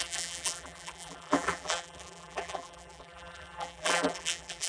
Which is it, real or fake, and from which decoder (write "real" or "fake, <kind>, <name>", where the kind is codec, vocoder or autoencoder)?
fake, vocoder, BigVGAN v2